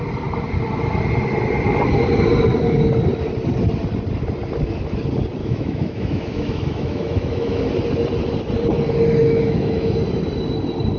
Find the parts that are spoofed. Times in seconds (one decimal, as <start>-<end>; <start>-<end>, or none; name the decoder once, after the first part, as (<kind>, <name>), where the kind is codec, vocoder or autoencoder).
5.4-7.7 (autoencoder, DAC-VAE); 9.2-10.0